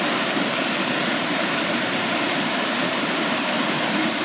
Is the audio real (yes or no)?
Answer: no